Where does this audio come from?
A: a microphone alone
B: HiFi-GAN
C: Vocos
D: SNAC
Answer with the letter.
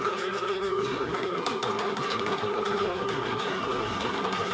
D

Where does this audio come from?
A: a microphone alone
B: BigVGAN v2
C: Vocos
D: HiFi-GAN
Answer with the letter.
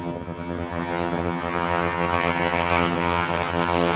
D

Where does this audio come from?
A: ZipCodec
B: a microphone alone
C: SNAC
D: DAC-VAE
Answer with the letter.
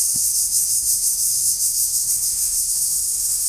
D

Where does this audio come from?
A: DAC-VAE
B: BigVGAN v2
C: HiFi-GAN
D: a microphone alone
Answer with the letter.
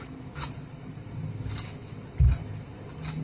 D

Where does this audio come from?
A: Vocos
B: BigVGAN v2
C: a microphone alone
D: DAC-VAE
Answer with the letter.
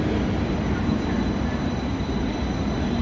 C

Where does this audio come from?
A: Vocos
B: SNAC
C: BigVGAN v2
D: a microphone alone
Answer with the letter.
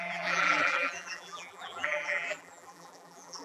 C